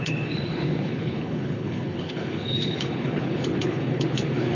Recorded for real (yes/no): no